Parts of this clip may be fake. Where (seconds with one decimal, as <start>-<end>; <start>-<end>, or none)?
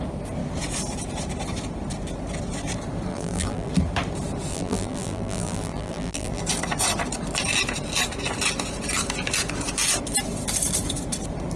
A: 3.1-3.7; 4.5-6.4